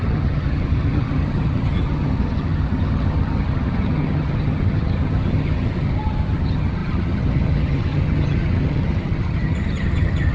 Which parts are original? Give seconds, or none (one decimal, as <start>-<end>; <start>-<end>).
none